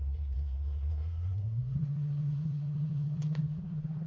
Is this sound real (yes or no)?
no